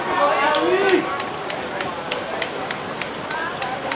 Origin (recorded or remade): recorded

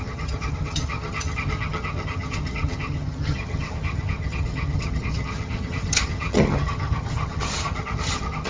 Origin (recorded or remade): remade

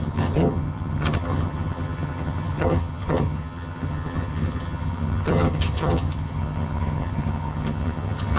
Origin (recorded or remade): remade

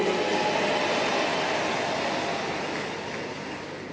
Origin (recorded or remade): recorded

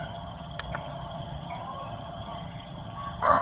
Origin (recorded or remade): remade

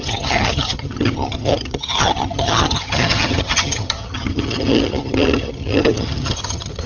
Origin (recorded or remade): remade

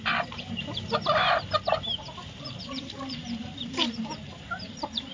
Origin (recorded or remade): recorded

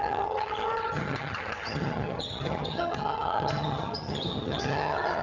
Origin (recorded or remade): remade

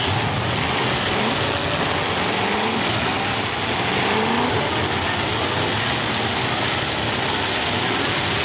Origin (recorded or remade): recorded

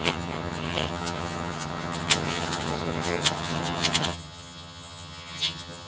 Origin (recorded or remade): remade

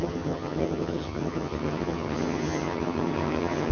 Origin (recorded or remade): remade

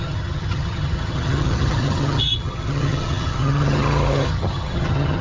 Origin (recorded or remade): remade